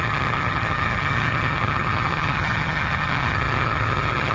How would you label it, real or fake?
fake